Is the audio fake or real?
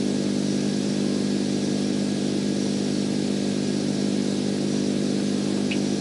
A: real